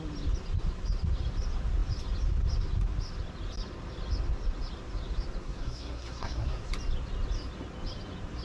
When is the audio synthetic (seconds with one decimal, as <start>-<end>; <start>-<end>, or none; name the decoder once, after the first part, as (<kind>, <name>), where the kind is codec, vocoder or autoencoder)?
5.4-6.7 (codec, SNAC)